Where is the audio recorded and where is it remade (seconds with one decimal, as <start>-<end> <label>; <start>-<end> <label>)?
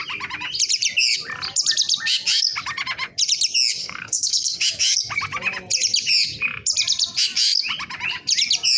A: 0.0-3.8 recorded; 3.8-4.6 remade; 4.6-8.8 recorded